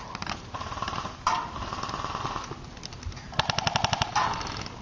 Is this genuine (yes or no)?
yes